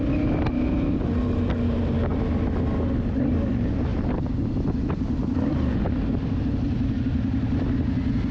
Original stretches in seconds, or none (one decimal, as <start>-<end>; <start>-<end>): 0.0-3.9; 6.9-8.3